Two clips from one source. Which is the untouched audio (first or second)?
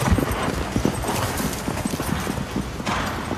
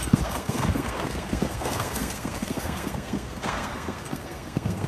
first